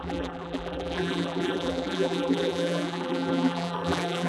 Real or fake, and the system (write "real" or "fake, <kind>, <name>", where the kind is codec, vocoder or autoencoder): fake, vocoder, BigVGAN v2